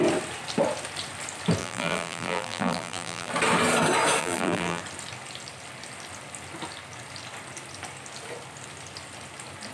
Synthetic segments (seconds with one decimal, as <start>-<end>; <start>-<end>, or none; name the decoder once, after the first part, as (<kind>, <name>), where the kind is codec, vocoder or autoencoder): 1.6-3.3 (vocoder, BigVGAN v2); 4.2-4.8